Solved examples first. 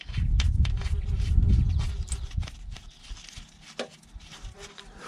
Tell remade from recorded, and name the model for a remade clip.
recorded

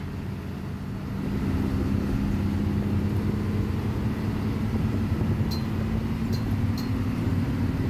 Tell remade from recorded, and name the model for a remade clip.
recorded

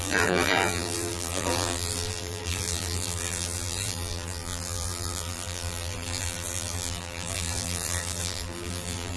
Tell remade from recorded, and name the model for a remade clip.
remade, vocoder, BigVGAN v2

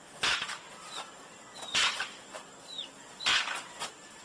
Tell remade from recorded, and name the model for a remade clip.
recorded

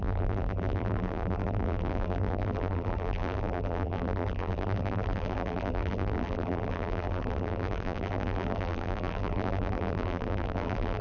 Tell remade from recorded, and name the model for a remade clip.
remade, vocoder, BigVGAN v2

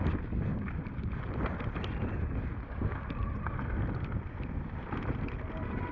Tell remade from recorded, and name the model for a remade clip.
recorded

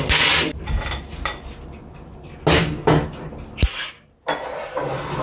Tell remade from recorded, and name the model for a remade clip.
recorded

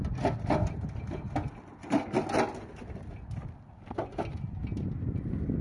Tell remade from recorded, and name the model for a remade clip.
recorded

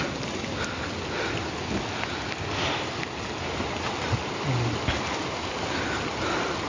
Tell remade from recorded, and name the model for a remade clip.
recorded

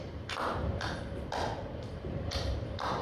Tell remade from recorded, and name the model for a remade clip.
remade, vocoder, BigVGAN v2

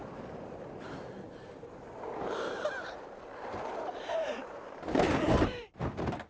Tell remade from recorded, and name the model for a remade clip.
remade, vocoder, BigVGAN v2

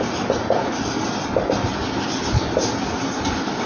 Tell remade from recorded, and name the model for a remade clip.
recorded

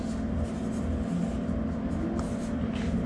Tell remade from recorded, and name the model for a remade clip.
recorded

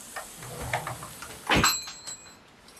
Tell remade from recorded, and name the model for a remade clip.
recorded